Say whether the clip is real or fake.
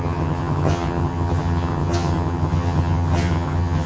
fake